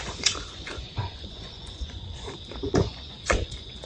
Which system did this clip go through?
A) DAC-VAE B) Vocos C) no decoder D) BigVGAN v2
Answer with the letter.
B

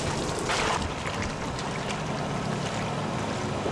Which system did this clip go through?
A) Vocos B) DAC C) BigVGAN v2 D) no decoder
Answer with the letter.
D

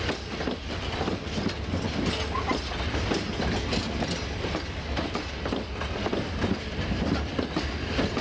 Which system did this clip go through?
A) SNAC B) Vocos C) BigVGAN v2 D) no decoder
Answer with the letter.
D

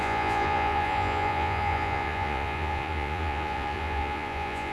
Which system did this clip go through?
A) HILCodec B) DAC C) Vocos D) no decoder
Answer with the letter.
C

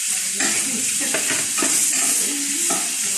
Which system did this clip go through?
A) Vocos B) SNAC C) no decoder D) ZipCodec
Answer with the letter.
C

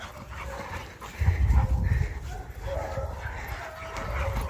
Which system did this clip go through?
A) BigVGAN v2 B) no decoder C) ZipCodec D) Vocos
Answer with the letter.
B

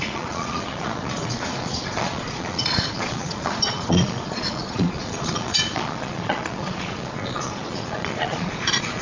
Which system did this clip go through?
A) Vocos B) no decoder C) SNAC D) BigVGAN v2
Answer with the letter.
A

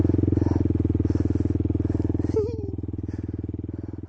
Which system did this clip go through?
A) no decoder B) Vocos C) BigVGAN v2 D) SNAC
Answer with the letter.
A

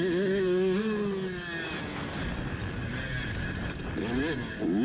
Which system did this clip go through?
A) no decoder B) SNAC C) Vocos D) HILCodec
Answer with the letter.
A